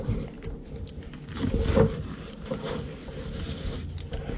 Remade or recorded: recorded